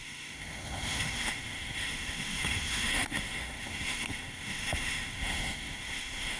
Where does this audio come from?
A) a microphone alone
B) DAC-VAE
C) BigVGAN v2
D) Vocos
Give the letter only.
B